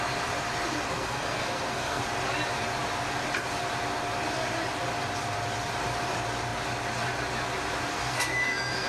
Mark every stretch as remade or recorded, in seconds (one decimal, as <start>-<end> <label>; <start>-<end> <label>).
0.0-0.9 recorded; 0.9-2.0 remade; 2.0-7.9 recorded; 7.9-8.9 remade